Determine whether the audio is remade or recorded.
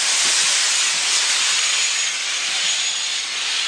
recorded